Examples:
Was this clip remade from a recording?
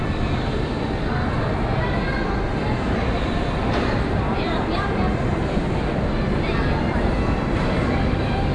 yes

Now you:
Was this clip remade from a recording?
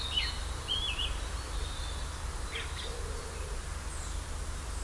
no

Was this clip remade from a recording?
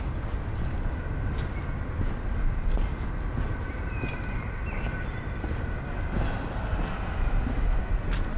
no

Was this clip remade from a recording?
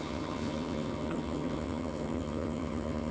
yes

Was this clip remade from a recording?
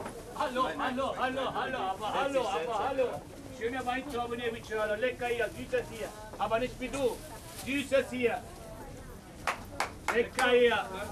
no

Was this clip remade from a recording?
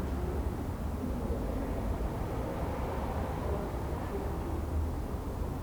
no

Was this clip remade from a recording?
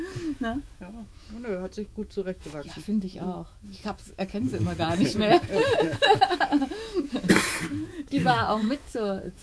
yes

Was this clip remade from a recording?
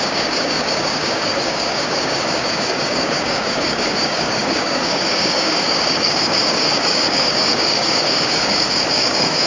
yes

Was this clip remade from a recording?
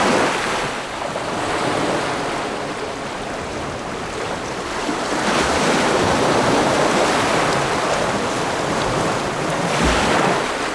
no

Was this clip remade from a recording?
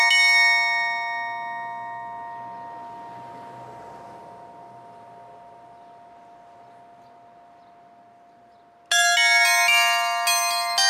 no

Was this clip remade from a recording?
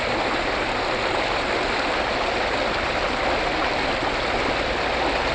no